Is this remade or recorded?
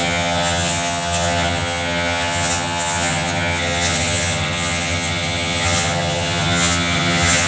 remade